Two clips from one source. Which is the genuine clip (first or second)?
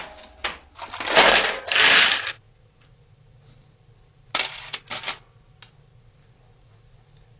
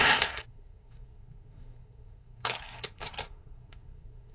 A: first